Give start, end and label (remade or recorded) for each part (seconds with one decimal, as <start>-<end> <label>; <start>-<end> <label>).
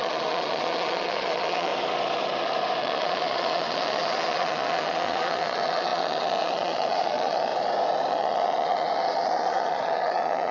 0.0-1.7 remade; 1.7-2.8 recorded; 2.8-7.5 remade; 7.5-8.1 recorded; 8.1-10.5 remade